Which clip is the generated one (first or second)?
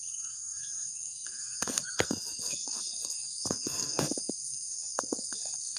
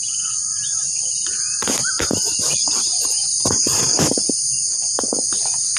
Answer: first